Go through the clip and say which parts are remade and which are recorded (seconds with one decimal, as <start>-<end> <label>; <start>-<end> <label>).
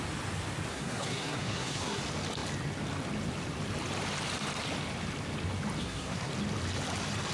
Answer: 0.0-0.7 recorded; 0.7-2.0 remade; 2.0-5.8 recorded; 5.8-6.3 remade; 6.3-7.3 recorded